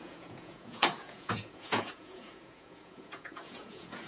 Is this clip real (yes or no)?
no